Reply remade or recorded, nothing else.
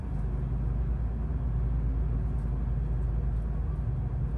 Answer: recorded